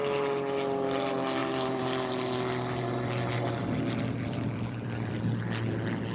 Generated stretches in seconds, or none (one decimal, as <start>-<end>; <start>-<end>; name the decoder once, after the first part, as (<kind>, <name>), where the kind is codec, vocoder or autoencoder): 1.4-5.1 (vocoder, BigVGAN v2)